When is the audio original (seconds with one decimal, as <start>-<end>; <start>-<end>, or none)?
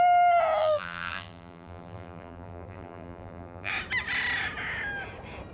0.0-0.6; 3.7-5.5